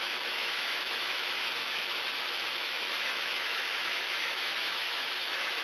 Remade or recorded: remade